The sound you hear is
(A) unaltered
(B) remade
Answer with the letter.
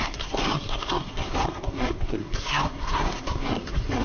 B